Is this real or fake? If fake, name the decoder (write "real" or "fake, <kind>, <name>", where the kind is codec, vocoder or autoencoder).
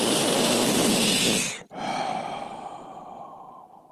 real